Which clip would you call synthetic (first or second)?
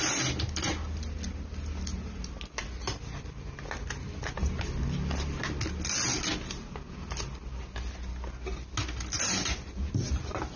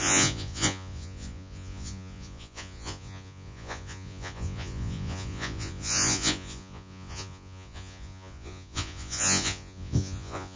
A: second